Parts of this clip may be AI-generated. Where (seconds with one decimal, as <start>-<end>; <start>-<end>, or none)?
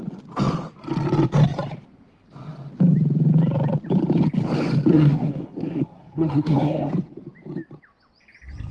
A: 4.9-6.9